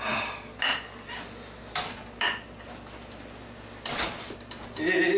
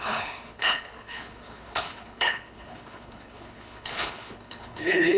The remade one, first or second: second